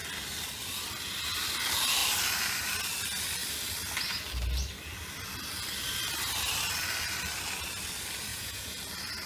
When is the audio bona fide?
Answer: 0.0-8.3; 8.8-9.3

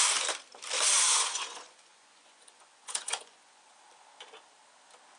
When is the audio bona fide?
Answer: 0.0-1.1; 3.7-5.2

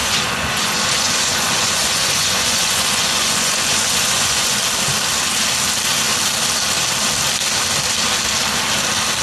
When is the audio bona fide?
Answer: 4.6-9.2

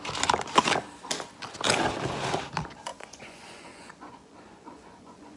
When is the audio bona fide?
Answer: 0.0-2.9